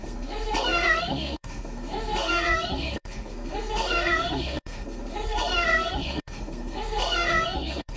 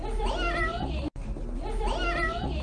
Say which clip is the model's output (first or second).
first